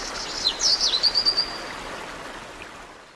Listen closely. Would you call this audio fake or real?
real